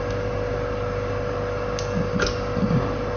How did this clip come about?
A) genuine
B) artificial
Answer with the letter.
A